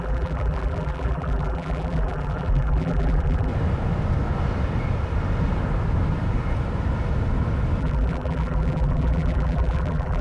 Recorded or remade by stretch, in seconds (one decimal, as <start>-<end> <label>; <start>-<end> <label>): 0.0-3.5 remade; 3.5-7.8 recorded; 7.8-10.2 remade